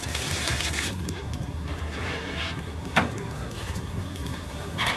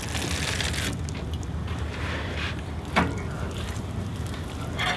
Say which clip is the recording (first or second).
second